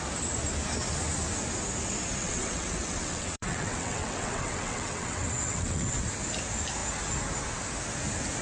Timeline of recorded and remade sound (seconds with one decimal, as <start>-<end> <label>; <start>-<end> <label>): 0.0-2.2 recorded; 2.2-6.0 remade; 6.0-8.4 recorded